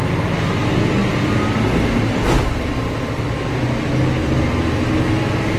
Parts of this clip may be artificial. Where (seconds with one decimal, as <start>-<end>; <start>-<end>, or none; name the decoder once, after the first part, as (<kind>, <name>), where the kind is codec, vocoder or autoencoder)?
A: none